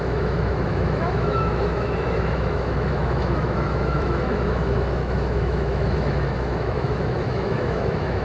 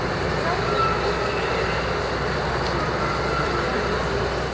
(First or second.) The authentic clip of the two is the second